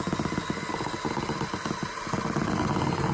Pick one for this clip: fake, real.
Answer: real